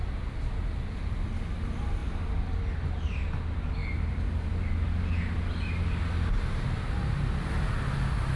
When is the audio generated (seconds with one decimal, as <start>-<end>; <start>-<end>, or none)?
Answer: none